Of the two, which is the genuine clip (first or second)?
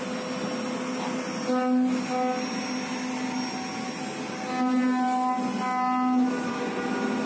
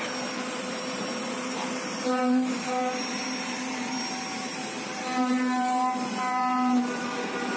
first